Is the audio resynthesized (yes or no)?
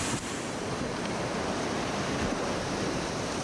yes